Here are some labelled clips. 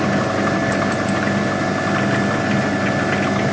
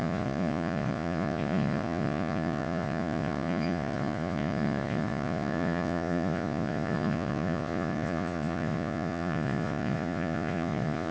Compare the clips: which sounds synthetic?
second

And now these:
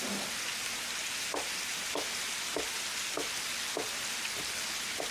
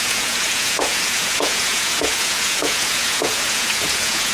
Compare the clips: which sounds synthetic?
second